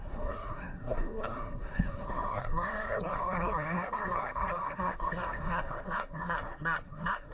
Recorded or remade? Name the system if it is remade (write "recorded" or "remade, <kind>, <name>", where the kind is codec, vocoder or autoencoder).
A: remade, codec, SNAC